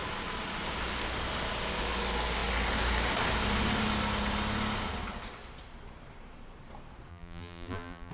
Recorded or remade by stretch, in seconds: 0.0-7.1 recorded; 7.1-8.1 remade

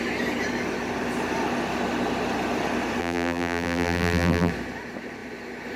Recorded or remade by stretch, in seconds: 0.0-3.0 recorded; 3.0-4.5 remade; 4.5-5.8 recorded